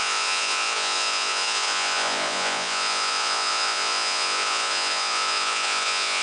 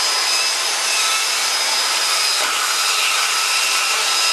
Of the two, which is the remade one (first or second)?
first